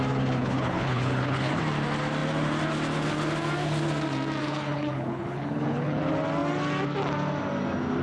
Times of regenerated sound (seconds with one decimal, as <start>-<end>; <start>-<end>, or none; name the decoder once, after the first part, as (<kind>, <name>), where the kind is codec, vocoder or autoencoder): 0.4-1.6 (codec, HILCodec); 4.4-6.0